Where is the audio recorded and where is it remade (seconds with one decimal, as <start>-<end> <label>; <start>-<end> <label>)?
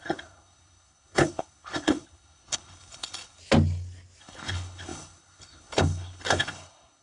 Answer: 0.0-3.4 remade; 3.4-4.2 recorded; 4.2-7.0 remade